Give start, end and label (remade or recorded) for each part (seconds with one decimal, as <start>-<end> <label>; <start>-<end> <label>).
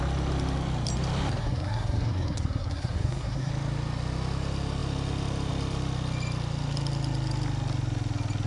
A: 0.0-1.4 recorded; 1.4-3.5 remade; 3.5-8.5 recorded